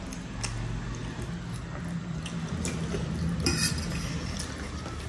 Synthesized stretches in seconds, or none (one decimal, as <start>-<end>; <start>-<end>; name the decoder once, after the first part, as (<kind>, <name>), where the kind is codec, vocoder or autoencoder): none